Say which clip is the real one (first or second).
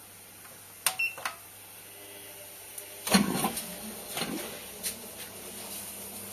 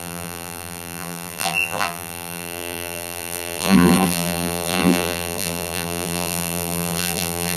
first